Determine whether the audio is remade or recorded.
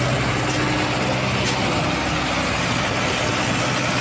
recorded